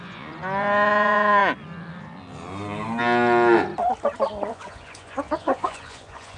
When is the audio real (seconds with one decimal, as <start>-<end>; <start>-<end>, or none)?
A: 1.4-4.5

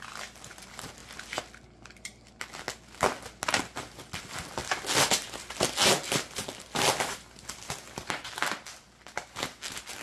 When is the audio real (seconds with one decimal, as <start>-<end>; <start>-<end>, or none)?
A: 0.0-10.0

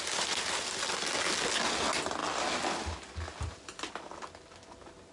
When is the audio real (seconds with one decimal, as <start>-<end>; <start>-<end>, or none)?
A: 0.0-5.1

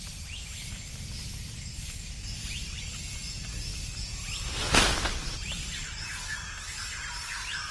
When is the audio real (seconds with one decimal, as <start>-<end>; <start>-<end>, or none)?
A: 0.0-7.7

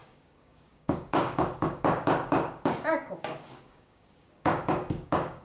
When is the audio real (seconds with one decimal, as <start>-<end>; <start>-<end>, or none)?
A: none